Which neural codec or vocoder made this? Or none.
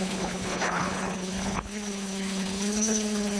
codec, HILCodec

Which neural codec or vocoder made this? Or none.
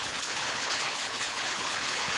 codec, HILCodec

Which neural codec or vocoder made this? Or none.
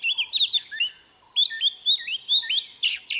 none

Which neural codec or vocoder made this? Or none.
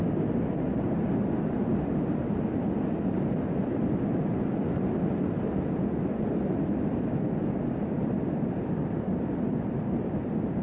none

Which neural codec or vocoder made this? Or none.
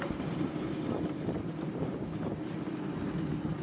none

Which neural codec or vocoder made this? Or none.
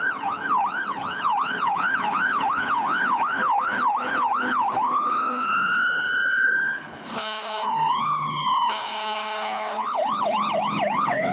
codec, HILCodec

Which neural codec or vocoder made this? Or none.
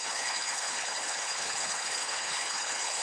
codec, HILCodec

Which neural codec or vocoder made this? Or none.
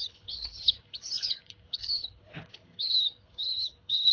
codec, HILCodec